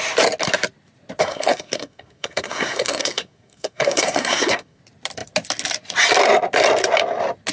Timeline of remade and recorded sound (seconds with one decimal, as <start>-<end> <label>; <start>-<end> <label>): 0.0-1.2 recorded; 1.2-4.8 remade; 4.8-7.5 recorded